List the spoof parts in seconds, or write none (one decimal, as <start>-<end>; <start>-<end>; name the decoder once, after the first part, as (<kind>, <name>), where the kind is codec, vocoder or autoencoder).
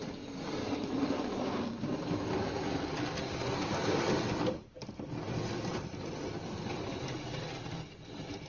none